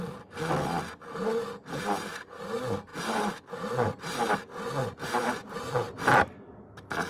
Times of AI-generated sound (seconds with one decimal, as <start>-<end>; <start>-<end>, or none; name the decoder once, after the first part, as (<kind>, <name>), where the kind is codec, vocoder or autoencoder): 2.9-3.4 (vocoder, BigVGAN v2); 5.4-6.3